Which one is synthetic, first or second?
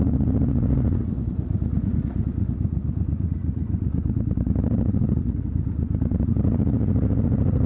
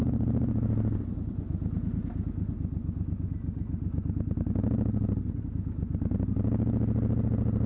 first